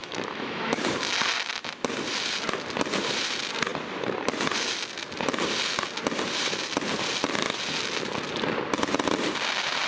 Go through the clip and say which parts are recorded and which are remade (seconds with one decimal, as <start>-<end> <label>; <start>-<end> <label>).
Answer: 0.0-0.8 remade; 0.8-9.9 recorded